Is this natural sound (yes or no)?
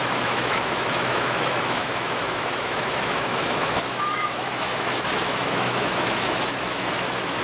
no